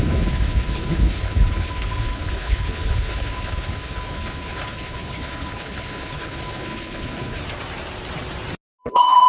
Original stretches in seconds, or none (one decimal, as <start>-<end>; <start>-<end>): 7.4-8.8